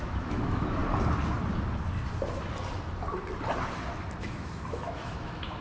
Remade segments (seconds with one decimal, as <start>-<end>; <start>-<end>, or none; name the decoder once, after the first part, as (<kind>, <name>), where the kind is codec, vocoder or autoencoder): 0.0-0.8 (autoencoder, DAC-VAE); 4.2-5.6